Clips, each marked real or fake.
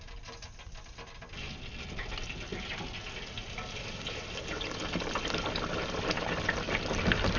real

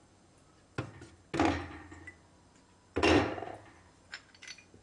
real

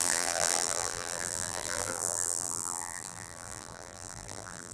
fake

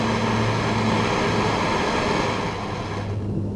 real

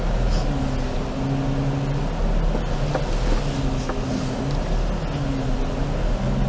real